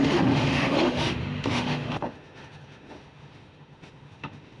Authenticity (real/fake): fake